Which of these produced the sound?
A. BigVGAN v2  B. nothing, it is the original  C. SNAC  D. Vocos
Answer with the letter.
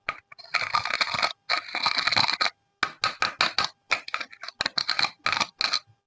B